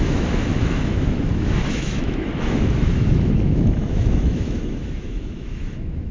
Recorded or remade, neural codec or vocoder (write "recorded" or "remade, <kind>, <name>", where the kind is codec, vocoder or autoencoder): remade, autoencoder, DAC-VAE